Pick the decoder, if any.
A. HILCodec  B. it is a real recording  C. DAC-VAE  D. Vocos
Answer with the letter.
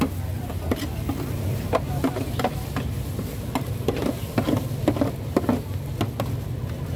B